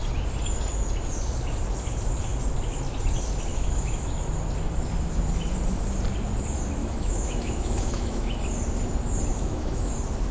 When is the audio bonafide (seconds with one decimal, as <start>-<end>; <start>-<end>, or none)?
0.0-3.5; 4.1-6.8; 8.4-9.3; 9.9-10.3